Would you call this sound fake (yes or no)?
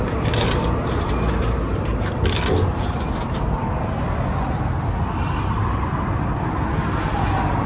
no